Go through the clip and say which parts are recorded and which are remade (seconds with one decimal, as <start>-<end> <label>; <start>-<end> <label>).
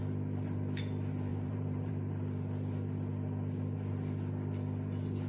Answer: 0.0-1.3 recorded; 1.3-1.9 remade; 1.9-5.3 recorded